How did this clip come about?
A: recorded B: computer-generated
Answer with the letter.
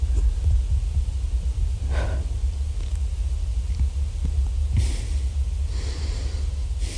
A